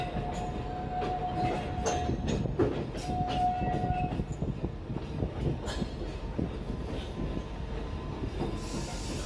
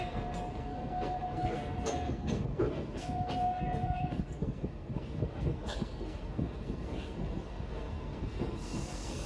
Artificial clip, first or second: second